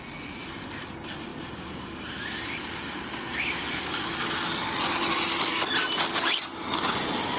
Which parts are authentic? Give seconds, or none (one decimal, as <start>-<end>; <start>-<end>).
0.0-7.4